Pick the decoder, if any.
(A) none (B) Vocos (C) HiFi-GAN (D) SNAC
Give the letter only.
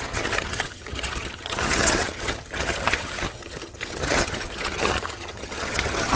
C